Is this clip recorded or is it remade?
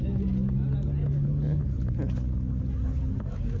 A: recorded